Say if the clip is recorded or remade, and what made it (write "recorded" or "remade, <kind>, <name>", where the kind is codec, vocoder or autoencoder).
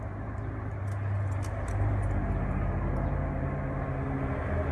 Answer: remade, vocoder, BigVGAN v2